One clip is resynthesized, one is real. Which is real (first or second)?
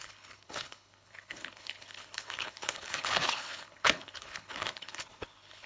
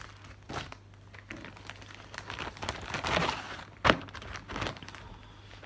second